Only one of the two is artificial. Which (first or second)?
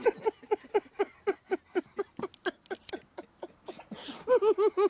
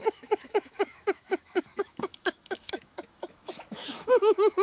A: second